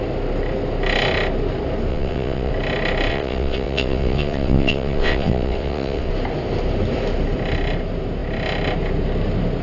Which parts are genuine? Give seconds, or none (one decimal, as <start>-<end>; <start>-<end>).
0.0-1.9; 2.5-3.1; 6.1-9.6